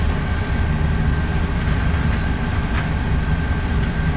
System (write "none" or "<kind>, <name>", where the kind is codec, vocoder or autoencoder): none